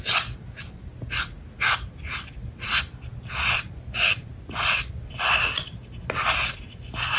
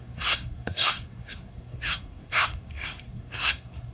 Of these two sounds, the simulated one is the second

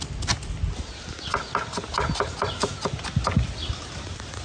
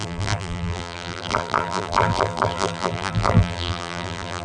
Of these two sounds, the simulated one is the second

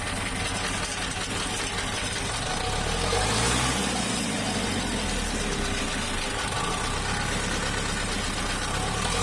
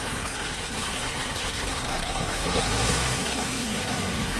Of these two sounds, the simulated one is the second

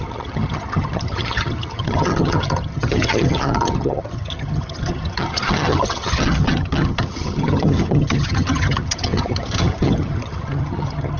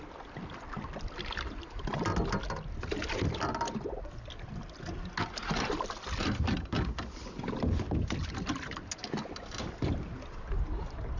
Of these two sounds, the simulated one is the first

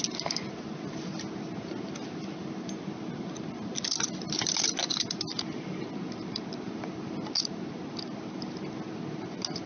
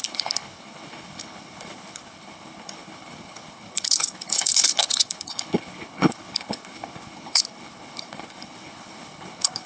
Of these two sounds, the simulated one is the second